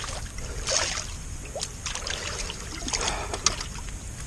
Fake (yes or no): no